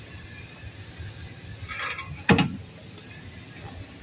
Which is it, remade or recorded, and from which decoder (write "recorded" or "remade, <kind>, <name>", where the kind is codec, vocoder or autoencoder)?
recorded